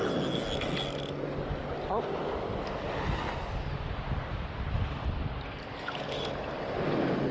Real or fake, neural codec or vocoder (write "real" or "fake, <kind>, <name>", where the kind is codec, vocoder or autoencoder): real